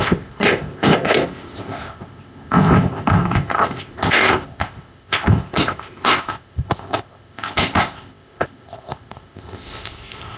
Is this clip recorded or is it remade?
remade